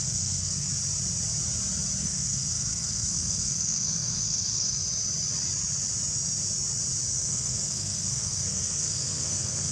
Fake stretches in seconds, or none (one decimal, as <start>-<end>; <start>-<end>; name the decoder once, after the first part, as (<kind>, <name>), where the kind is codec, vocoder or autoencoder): 0.0-0.7 (codec, SNAC); 2.0-4.8; 7.1-9.7